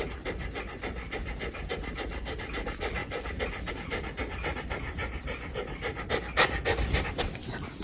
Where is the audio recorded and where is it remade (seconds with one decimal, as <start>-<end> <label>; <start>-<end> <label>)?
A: 0.0-7.8 recorded